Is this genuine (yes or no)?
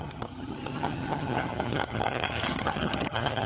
no